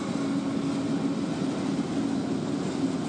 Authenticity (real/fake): real